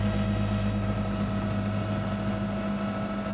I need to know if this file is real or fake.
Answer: real